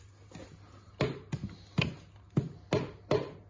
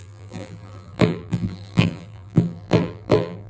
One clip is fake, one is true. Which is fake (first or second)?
second